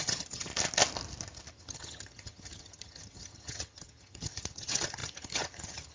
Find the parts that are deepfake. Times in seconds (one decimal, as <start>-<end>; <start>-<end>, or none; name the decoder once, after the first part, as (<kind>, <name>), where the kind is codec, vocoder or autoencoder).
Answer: 0.0-0.5 (vocoder, HiFi-GAN); 1.5-5.9